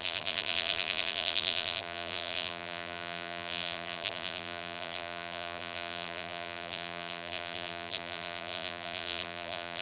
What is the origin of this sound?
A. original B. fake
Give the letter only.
B